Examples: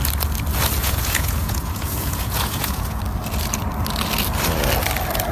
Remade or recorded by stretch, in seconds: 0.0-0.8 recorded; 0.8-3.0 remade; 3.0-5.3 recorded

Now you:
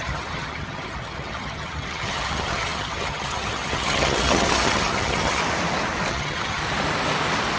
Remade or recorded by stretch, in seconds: 0.0-5.4 remade; 5.4-6.1 recorded; 6.1-6.6 remade; 6.6-7.6 recorded